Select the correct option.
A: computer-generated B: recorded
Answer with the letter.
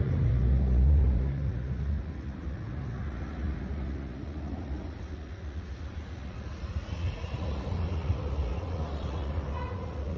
A